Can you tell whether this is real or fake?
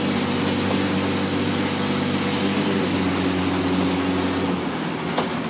real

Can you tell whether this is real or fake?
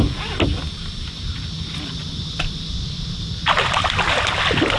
real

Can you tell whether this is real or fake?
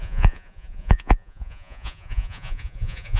fake